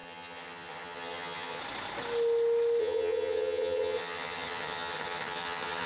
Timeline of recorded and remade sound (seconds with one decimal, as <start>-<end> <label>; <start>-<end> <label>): 0.0-1.6 remade; 1.6-2.8 recorded; 2.8-5.9 remade